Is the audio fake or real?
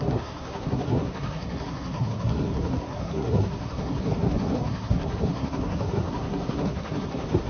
fake